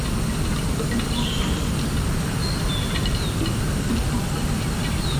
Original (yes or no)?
yes